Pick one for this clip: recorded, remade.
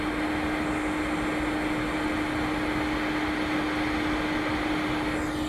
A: recorded